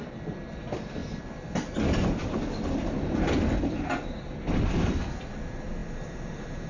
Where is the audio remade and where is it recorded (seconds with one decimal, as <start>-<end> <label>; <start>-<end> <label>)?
0.0-6.7 recorded